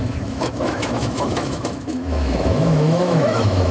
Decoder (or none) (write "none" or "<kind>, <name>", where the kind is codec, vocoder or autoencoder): autoencoder, DAC-VAE